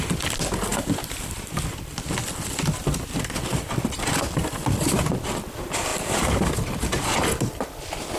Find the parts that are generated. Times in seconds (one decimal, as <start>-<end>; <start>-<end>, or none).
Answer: none